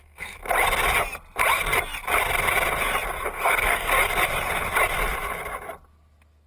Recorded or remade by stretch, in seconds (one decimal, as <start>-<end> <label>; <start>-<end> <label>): 0.0-0.4 remade; 0.4-3.1 recorded; 3.1-3.9 remade; 3.9-6.5 recorded